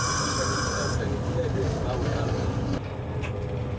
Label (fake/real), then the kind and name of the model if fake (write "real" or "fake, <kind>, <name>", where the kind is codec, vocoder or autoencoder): real